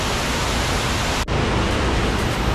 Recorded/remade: recorded